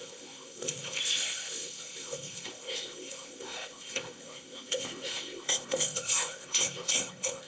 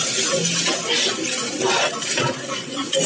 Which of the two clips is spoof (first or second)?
first